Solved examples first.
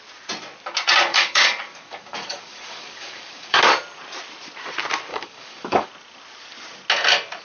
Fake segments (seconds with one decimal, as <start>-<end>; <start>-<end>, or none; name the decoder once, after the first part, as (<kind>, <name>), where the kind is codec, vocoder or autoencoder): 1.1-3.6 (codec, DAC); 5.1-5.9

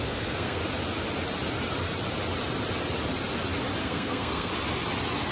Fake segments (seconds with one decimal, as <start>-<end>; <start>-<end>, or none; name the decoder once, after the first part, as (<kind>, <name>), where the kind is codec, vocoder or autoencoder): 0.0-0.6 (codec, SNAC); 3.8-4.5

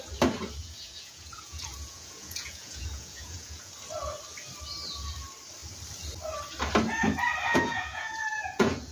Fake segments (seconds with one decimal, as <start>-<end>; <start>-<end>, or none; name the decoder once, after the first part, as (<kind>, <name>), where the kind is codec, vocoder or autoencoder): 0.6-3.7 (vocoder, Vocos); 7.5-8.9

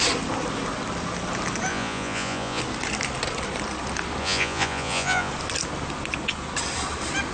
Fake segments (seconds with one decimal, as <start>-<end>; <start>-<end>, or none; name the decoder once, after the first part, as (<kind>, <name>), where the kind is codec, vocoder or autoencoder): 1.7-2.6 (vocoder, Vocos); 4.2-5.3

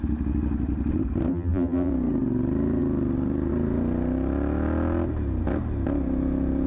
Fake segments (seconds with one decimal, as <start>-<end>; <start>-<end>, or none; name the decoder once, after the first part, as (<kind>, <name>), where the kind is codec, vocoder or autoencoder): 1.3-1.9 (vocoder, BigVGAN v2)

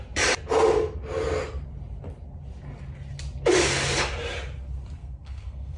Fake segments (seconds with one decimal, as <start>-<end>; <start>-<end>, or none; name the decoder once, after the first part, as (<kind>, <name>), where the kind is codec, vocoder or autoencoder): 5.0-5.8 (codec, SNAC)

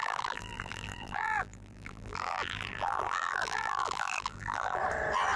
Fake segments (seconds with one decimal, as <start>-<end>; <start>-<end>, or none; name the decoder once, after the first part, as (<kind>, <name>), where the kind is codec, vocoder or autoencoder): 0.0-4.8 (vocoder, BigVGAN v2)